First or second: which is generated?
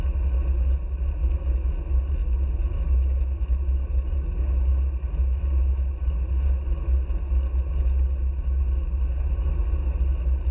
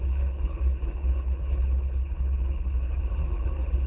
second